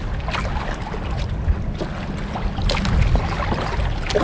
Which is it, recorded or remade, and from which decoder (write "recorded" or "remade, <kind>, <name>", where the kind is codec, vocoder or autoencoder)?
recorded